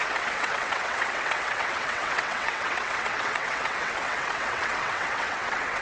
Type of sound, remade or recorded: remade